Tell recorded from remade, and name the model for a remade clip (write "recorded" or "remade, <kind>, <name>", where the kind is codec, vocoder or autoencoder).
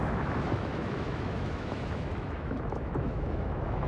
remade, autoencoder, DAC-VAE